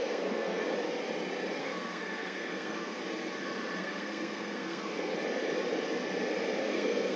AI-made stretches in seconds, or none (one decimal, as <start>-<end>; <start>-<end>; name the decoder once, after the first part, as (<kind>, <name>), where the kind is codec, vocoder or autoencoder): 0.0-0.6 (codec, SNAC); 1.6-3.0; 3.8-5.1; 6.6-7.2